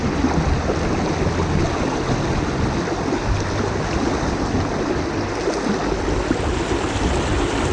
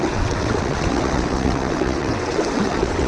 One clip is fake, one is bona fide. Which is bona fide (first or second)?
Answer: first